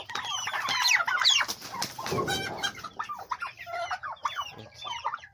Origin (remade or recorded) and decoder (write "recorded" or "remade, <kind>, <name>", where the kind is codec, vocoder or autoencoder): recorded